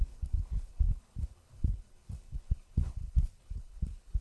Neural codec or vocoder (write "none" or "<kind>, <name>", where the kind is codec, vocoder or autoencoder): codec, HILCodec